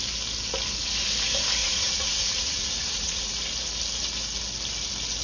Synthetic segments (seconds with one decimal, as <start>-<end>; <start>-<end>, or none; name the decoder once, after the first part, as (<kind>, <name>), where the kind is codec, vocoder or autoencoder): 1.6-3.3 (vocoder, Vocos)